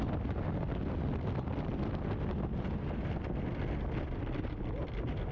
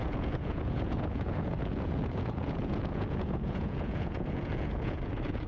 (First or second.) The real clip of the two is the first